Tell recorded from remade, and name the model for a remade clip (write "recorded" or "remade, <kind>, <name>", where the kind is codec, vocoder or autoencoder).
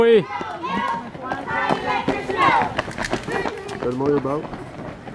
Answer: recorded